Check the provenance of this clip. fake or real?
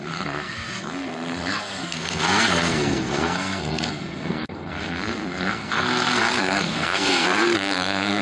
fake